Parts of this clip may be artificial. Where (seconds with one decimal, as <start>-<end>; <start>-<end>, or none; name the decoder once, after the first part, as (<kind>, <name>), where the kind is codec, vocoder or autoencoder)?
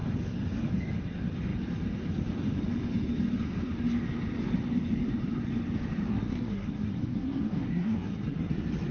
6.1-8.5 (codec, SNAC)